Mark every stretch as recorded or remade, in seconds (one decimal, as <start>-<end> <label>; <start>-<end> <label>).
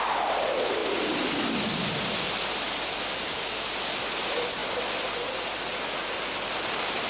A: 0.0-7.1 recorded